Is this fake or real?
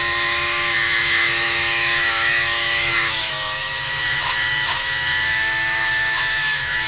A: fake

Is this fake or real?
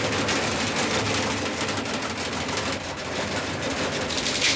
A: real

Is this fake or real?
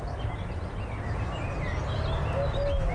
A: real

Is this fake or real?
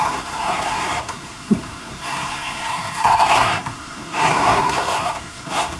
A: fake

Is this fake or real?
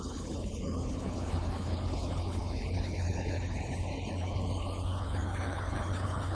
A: fake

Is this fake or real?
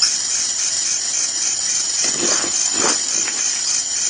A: real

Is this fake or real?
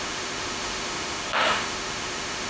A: fake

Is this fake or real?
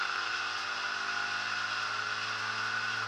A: real